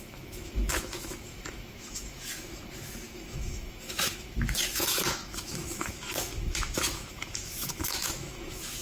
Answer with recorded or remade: remade